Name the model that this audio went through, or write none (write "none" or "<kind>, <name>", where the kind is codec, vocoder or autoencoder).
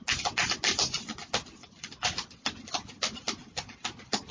none